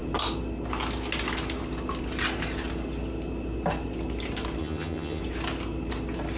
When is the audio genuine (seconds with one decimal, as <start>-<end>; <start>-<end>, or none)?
0.0-4.6; 5.2-6.4